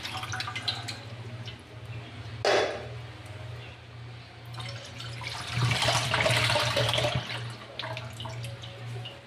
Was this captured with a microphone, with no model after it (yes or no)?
yes